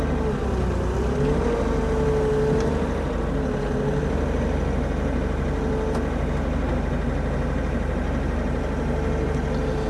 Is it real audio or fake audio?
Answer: real